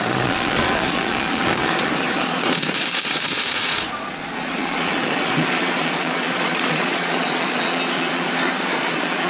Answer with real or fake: fake